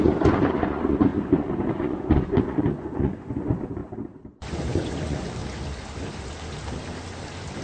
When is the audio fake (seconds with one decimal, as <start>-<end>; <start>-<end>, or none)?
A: 0.0-3.8; 4.4-5.4